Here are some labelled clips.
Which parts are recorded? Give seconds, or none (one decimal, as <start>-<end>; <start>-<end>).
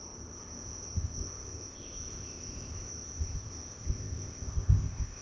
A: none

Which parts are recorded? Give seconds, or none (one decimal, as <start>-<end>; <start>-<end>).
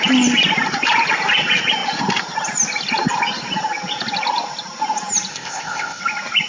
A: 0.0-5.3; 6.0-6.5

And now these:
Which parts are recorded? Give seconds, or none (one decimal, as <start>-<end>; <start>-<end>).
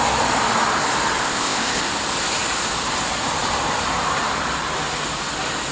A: 0.0-1.2; 1.8-5.7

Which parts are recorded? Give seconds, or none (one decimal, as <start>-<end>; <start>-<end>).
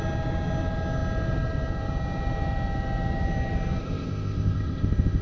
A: 0.0-3.8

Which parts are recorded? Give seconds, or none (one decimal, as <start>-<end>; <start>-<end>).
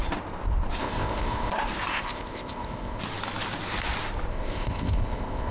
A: 0.0-0.8; 1.5-1.9; 3.0-4.3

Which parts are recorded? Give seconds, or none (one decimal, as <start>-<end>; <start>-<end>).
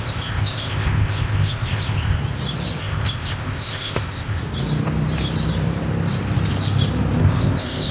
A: 2.2-2.8; 4.4-7.2